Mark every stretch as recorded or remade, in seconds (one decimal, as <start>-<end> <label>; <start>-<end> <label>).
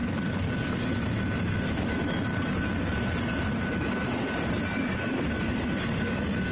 0.0-6.5 recorded